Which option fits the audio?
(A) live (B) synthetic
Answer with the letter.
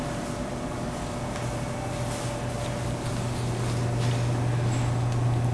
A